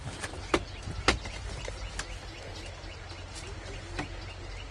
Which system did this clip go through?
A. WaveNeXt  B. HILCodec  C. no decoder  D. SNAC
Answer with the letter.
C